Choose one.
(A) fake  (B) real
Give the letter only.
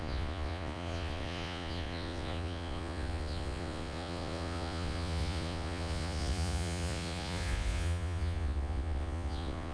A